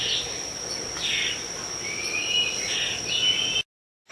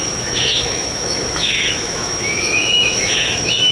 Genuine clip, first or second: first